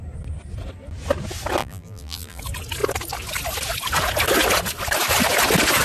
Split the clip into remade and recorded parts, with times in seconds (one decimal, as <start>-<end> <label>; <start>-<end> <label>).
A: 0.0-1.6 recorded; 1.6-2.4 remade; 2.4-5.8 recorded